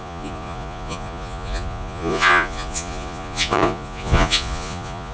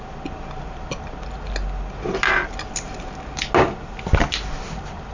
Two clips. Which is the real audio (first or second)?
second